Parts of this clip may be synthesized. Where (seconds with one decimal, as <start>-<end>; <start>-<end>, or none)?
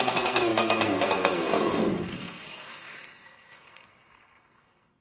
0.0-5.0